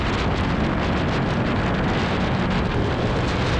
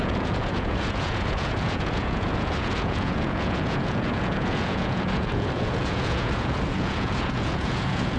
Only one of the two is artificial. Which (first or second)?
second